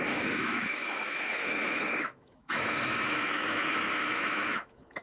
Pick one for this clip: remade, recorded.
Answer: remade